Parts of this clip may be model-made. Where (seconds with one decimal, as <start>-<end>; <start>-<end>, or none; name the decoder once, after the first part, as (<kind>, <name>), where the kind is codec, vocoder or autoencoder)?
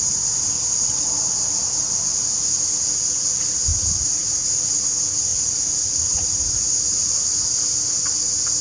3.7-4.8 (vocoder, Vocos); 5.3-6.8